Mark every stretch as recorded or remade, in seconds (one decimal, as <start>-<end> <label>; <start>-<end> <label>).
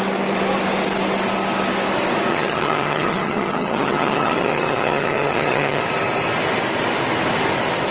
0.0-2.3 recorded; 2.3-5.8 remade; 5.8-7.9 recorded